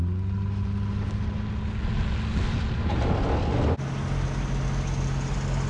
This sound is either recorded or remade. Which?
recorded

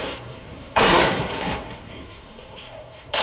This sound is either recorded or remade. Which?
remade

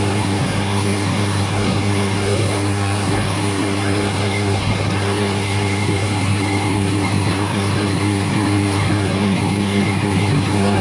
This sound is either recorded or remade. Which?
remade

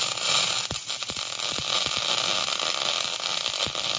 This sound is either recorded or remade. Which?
recorded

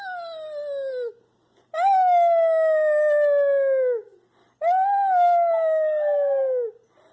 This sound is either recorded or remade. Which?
recorded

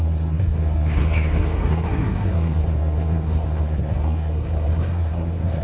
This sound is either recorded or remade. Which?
remade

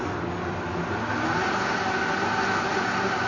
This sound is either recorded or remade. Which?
recorded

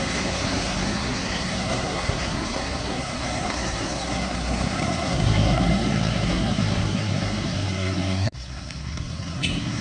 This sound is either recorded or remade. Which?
remade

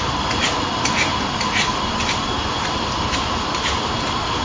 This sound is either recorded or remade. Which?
recorded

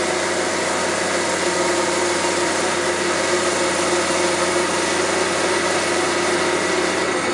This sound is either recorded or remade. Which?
recorded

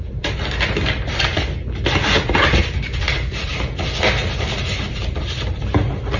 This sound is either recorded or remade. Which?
recorded